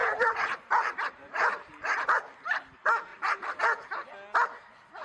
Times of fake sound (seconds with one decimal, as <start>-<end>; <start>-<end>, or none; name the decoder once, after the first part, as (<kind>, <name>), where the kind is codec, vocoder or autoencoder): 0.0-2.0 (vocoder, BigVGAN v2); 3.1-3.6